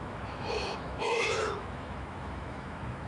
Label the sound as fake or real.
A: fake